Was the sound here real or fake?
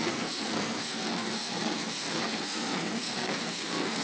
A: fake